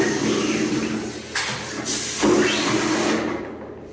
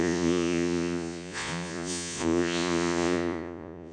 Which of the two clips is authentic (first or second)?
first